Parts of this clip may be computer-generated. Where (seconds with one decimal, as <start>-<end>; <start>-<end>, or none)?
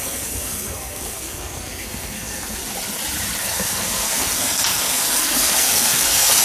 0.0-2.6; 3.4-6.4